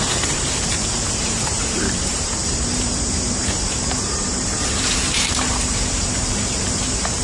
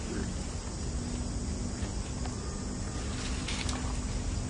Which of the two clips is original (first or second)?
second